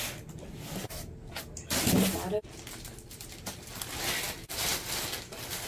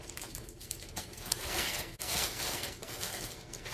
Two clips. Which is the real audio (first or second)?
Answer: first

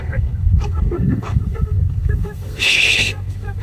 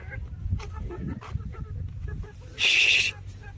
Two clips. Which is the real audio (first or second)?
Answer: second